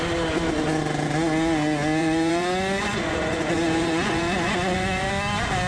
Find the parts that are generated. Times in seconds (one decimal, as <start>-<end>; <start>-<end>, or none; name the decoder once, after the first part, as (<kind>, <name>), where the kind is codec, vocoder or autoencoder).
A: 2.0-5.1 (vocoder, Vocos)